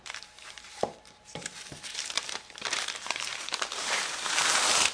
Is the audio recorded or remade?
remade